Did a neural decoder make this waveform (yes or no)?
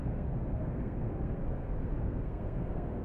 yes